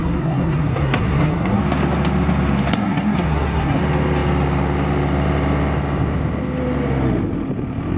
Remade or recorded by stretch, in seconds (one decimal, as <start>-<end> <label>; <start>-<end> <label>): 0.0-1.6 remade; 1.6-2.7 recorded; 2.7-3.8 remade; 3.8-8.0 recorded